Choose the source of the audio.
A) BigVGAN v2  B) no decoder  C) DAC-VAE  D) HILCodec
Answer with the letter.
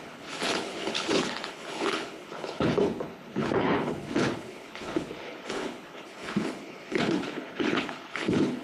D